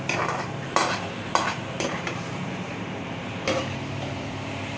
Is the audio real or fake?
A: fake